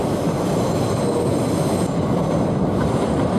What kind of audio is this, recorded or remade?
recorded